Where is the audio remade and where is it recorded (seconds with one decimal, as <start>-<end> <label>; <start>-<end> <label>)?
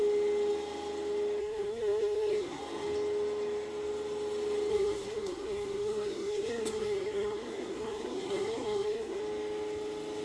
0.0-1.4 recorded; 1.4-2.6 remade; 2.6-4.7 recorded; 4.7-9.2 remade; 9.2-10.2 recorded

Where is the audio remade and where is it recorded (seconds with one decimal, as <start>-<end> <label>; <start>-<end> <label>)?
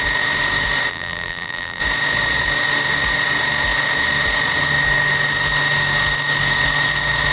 0.0-0.9 recorded; 0.9-1.8 remade; 1.8-7.3 recorded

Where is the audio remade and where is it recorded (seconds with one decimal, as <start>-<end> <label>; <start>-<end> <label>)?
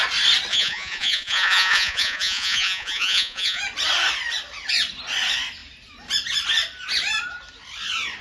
0.0-0.5 recorded; 0.5-3.6 remade; 3.6-8.2 recorded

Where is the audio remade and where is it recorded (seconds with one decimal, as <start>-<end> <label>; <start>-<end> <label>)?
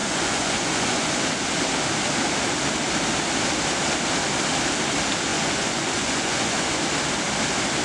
0.0-1.2 remade; 1.2-5.3 recorded; 5.3-6.8 remade; 6.8-7.8 recorded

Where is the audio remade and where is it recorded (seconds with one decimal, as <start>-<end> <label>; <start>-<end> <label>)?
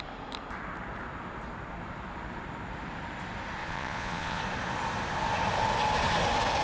0.0-3.6 recorded; 3.6-4.4 remade; 4.4-6.6 recorded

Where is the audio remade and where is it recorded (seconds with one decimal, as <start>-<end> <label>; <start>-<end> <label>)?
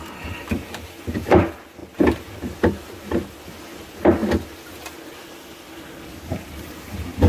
0.0-7.3 recorded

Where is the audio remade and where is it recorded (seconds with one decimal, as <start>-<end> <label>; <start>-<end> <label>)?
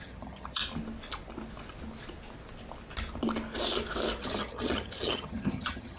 0.0-0.6 remade; 0.6-4.2 recorded; 4.2-6.0 remade